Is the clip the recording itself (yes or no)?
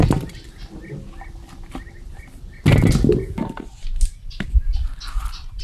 yes